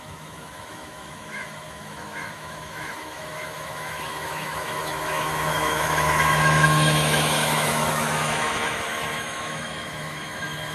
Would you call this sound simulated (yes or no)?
yes